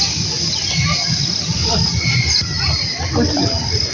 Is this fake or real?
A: real